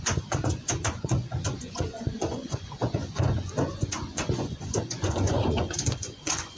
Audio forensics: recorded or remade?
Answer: remade